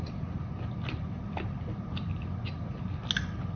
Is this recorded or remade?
recorded